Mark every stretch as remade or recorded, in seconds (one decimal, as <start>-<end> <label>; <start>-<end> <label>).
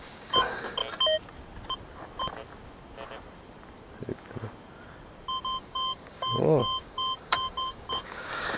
0.0-0.8 remade; 0.8-5.6 recorded; 5.6-8.6 remade